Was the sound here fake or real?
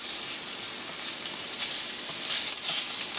real